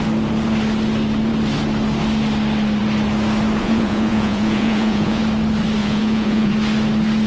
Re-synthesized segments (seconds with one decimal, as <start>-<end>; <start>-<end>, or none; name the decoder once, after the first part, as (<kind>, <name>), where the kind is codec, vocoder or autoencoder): 3.6-5.2 (vocoder, Vocos); 5.8-6.5